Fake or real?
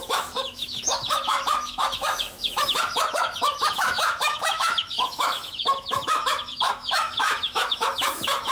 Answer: fake